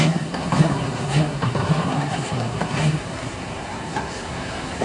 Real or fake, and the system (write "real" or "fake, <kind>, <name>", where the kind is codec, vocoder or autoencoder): fake, codec, SNAC